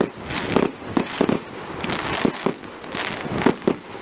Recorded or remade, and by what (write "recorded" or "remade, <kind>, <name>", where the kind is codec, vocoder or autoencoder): recorded